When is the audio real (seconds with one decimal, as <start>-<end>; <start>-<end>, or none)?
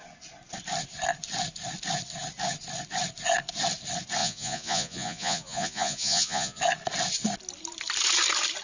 0.0-4.2; 6.6-8.6